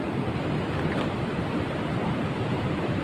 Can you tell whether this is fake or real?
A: real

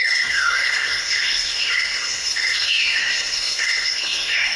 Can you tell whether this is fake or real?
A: fake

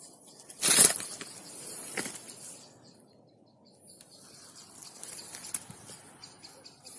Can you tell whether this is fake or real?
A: real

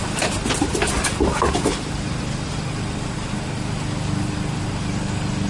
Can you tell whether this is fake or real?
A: real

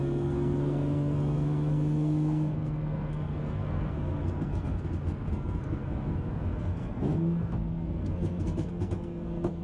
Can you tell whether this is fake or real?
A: fake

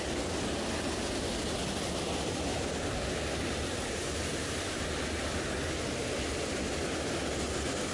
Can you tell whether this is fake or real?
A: real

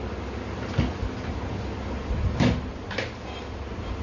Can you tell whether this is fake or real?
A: real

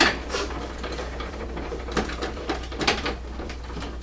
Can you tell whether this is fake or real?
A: fake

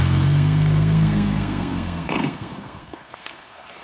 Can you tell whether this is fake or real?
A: fake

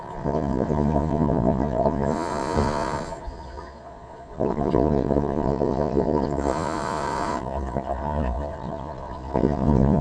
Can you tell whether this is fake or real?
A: fake